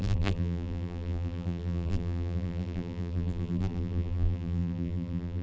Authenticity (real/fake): fake